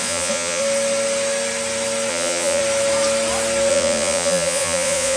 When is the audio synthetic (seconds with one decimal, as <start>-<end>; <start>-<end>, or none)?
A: 0.0-0.6; 2.1-2.6; 3.7-5.2